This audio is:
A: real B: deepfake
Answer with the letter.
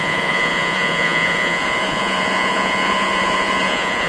B